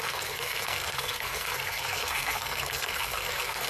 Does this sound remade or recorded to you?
remade